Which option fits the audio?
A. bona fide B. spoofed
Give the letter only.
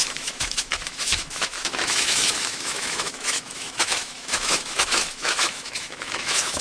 B